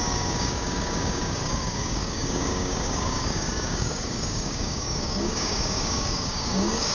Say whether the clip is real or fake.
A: fake